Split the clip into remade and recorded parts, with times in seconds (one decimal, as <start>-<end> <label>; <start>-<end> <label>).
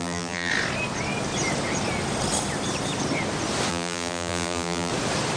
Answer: 0.0-0.5 remade; 0.5-3.7 recorded; 3.7-4.9 remade; 4.9-5.4 recorded